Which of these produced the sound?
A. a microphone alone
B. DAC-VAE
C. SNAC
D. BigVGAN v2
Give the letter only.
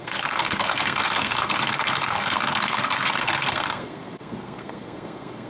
C